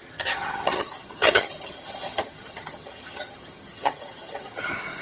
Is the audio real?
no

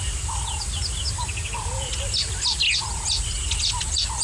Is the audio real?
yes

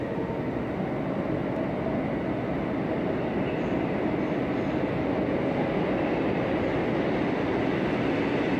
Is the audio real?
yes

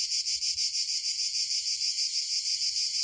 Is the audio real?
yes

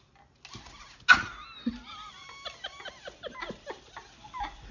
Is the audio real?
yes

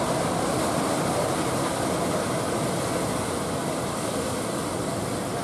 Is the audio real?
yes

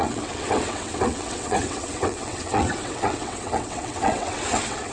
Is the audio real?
no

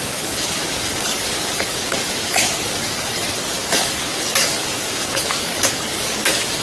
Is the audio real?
no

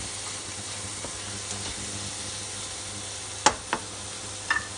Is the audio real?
yes